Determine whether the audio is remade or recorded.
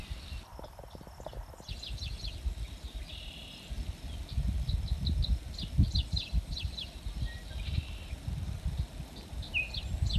recorded